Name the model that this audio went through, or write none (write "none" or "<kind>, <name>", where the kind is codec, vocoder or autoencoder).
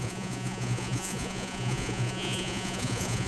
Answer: vocoder, Vocos